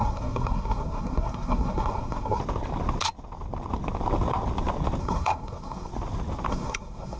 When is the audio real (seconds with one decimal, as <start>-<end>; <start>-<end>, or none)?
2.4-5.0; 5.9-6.5